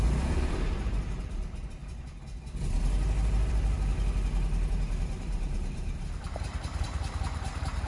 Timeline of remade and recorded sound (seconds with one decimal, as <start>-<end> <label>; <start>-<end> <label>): 0.0-1.8 remade; 1.8-3.5 recorded; 3.5-3.9 remade; 3.9-4.7 recorded; 4.7-7.9 remade